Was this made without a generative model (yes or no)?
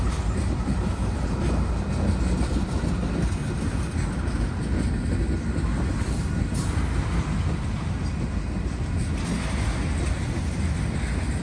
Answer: yes